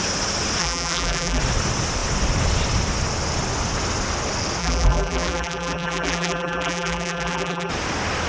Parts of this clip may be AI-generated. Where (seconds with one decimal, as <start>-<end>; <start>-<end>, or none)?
0.6-1.4; 4.6-7.7